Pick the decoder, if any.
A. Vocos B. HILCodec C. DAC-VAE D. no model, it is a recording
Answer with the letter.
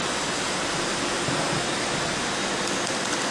D